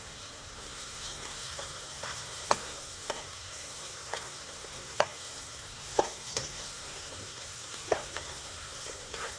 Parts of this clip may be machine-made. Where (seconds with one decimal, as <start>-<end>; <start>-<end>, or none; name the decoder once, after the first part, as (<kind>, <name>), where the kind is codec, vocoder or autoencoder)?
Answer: 0.0-9.4 (codec, SNAC)